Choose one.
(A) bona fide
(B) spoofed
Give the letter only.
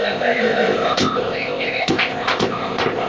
B